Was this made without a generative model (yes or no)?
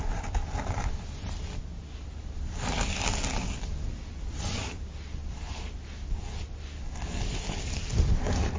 yes